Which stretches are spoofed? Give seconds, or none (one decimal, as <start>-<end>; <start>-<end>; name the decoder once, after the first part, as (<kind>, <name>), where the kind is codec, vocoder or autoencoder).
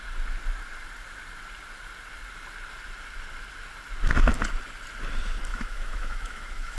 5.5-6.8 (autoencoder, DAC-VAE)